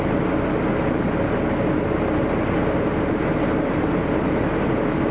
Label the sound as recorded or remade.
recorded